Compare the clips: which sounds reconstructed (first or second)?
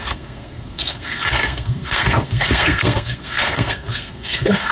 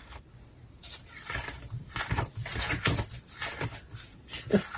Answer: first